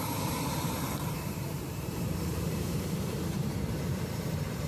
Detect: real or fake fake